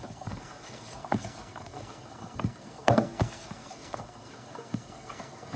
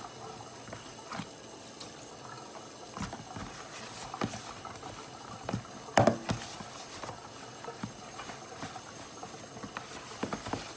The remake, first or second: first